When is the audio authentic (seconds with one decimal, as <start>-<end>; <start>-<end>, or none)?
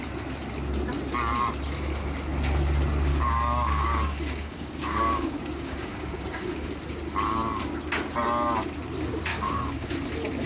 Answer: 0.0-3.1; 6.7-9.3; 9.9-10.5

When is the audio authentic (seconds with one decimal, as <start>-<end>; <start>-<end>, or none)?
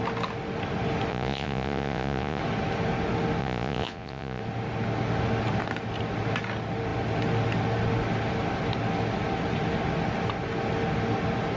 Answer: 0.0-1.1; 2.4-3.4; 4.4-11.6